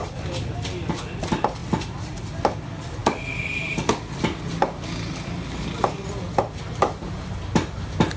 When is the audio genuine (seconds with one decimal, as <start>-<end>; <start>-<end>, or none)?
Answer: 1.0-8.2